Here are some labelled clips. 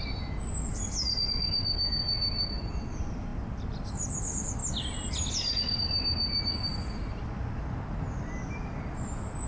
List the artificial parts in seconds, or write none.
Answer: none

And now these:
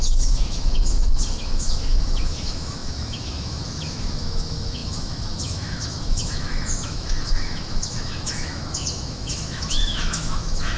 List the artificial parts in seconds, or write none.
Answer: 0.0-10.8 (autoencoder, DAC-VAE)